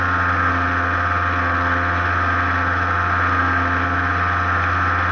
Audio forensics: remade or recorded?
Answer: recorded